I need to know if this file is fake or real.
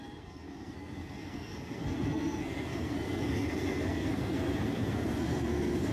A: fake